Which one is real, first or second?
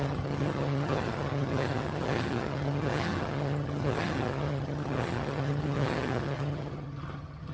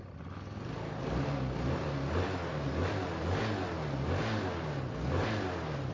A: second